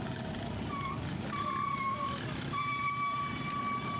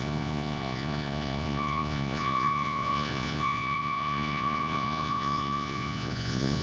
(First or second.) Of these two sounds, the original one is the first